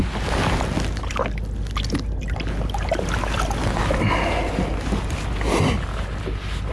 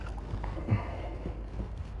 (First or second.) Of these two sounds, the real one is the first